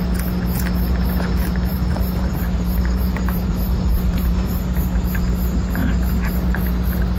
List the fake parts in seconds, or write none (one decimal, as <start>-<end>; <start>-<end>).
1.7-4.6

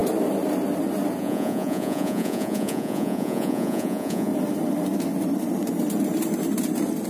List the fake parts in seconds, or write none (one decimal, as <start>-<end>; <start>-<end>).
1.2-4.3

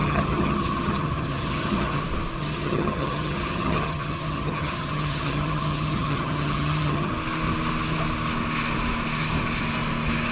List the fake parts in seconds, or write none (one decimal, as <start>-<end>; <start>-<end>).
0.0-2.0; 2.4-7.1

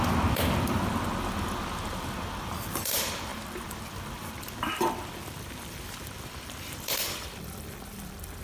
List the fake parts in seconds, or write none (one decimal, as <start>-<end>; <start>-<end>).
0.0-8.4

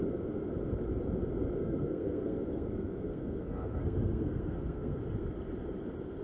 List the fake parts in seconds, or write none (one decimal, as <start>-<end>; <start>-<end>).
1.6-5.0

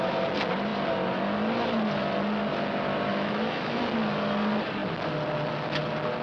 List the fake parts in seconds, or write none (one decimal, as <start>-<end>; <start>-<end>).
3.1-3.8

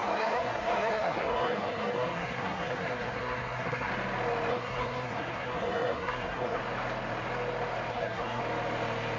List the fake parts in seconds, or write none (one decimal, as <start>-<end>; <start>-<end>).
0.0-3.9; 4.5-6.6; 7.9-8.4